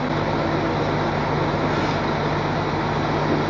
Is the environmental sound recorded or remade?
recorded